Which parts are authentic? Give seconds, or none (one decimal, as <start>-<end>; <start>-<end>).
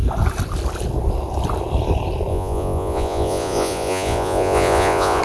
0.0-2.3